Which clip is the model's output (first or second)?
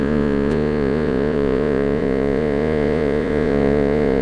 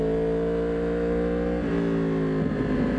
first